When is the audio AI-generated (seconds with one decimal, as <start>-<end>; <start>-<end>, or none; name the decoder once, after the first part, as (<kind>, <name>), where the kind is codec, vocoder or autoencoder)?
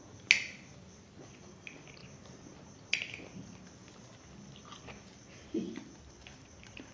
none